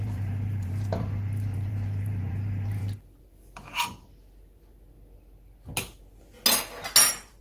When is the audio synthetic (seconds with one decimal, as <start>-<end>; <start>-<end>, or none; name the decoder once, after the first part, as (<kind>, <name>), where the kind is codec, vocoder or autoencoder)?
0.0-2.8 (vocoder, BigVGAN v2); 7.0-7.4